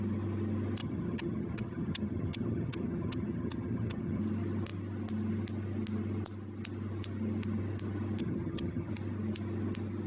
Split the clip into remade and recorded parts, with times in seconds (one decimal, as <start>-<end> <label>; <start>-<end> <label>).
0.0-0.8 recorded; 0.8-4.2 remade; 4.2-8.2 recorded; 8.2-8.9 remade; 8.9-10.1 recorded